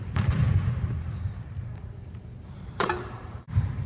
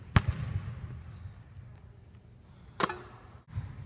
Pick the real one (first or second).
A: second